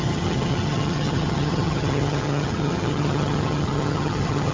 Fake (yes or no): yes